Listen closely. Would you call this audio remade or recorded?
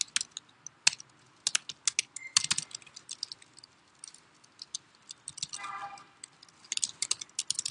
recorded